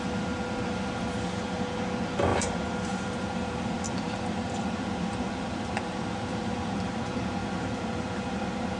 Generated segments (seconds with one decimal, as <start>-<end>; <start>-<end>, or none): 2.3-7.0; 7.4-8.4